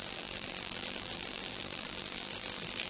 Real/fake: fake